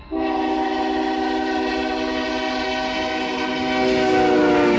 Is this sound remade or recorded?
recorded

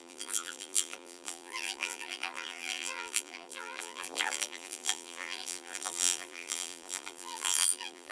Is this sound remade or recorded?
remade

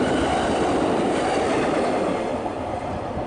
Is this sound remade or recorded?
remade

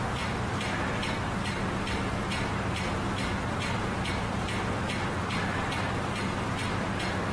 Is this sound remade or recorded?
remade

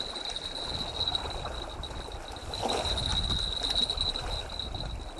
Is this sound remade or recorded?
recorded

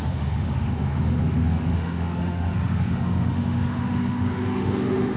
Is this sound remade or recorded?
remade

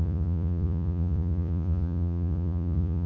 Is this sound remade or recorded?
remade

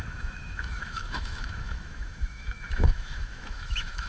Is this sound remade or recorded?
remade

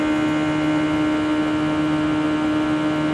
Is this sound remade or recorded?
recorded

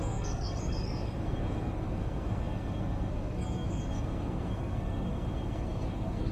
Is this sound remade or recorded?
remade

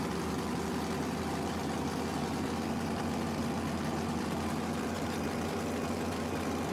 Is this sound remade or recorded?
recorded